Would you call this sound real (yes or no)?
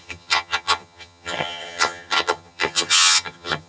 no